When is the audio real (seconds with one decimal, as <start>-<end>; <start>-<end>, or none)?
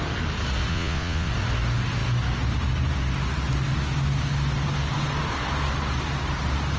0.0-0.7; 1.3-6.8